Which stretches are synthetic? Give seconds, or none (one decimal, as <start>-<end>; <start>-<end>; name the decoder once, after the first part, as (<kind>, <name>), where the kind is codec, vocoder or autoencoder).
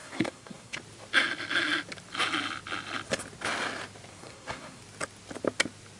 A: 0.0-0.8 (codec, SNAC); 4.1-4.8